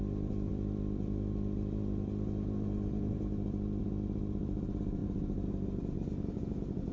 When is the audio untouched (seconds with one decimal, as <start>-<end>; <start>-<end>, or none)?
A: 0.0-6.9